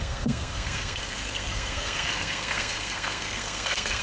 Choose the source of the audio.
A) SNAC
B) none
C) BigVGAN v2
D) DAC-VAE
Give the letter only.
A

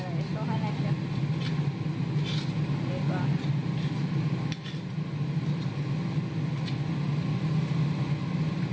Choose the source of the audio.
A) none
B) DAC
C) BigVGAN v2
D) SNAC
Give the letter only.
A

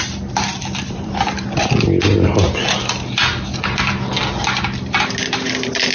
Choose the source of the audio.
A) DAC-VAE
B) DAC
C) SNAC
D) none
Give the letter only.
D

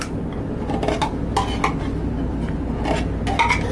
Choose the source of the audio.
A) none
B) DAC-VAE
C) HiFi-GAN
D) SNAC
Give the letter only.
A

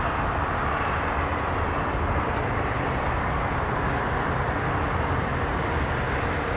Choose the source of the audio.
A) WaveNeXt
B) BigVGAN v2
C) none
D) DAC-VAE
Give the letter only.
C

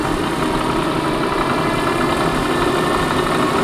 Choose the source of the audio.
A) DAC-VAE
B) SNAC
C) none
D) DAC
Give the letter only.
C